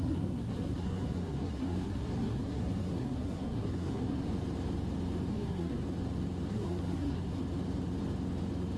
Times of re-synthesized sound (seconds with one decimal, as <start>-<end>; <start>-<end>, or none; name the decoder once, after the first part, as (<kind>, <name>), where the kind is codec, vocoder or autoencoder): 0.0-4.3 (codec, SNAC); 5.3-5.8; 6.5-7.4